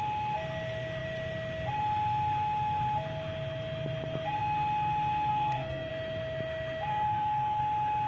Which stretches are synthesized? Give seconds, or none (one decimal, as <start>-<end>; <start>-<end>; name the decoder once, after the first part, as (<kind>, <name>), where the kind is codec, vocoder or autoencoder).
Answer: 5.3-5.9 (codec, SNAC); 6.9-7.6